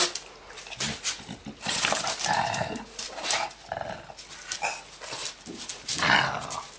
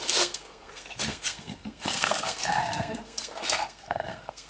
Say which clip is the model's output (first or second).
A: second